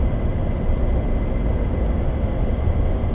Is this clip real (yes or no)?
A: yes